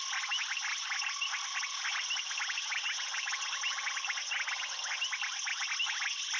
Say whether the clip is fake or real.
real